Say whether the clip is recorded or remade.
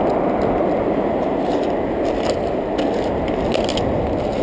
recorded